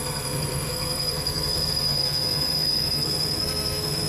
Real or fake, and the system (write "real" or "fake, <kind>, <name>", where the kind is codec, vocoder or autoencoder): fake, codec, SNAC